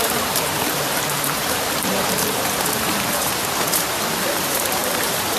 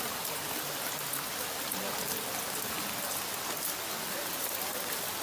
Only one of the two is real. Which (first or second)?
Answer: second